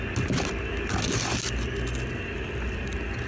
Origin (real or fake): real